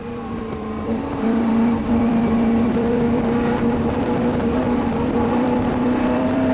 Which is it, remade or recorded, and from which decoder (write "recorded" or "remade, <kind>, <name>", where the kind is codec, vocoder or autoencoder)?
remade, vocoder, BigVGAN v2